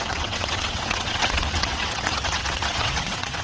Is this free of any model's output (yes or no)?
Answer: no